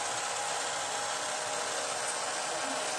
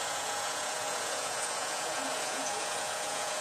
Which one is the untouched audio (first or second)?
first